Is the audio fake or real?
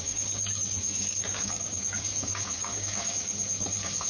fake